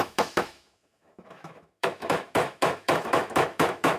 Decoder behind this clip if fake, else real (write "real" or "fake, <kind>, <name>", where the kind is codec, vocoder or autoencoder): fake, autoencoder, DAC-VAE